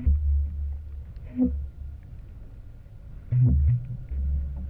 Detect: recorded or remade recorded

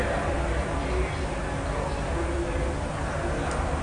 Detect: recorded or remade recorded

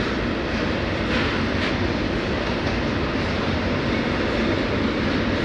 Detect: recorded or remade recorded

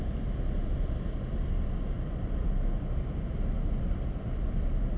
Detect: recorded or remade remade